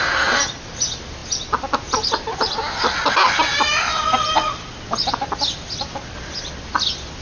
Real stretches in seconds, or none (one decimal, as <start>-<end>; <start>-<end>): 0.0-7.2

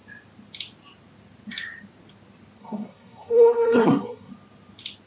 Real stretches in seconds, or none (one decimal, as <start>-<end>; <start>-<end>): 0.0-2.6; 4.3-5.1

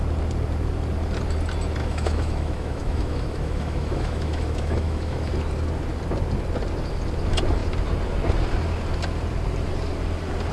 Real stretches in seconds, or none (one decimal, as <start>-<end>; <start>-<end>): 0.0-1.8; 5.3-10.5

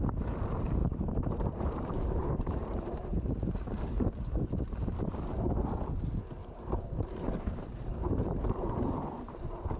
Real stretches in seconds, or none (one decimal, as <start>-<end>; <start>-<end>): 0.0-0.8; 5.2-6.4

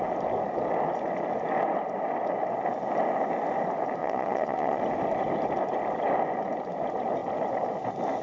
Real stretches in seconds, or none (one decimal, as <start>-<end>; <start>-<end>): 0.0-4.0; 4.8-8.2